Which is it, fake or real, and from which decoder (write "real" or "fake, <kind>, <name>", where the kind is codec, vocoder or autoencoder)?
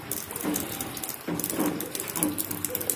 real